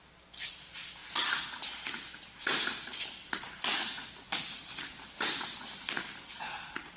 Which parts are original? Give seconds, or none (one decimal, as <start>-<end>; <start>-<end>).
0.0-7.0